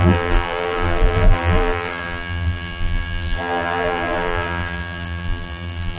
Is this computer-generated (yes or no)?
yes